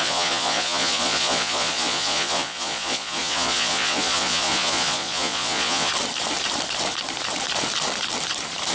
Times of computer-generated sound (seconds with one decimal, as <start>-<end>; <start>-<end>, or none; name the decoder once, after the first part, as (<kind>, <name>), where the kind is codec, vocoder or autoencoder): 0.0-5.9 (vocoder, Vocos)